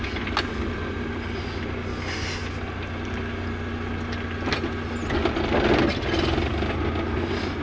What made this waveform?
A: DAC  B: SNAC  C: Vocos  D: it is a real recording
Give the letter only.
D